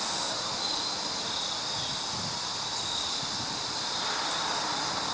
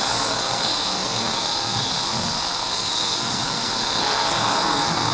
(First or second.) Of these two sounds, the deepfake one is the second